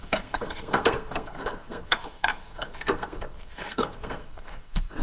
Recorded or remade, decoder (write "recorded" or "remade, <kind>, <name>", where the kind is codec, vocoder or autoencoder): remade, codec, SNAC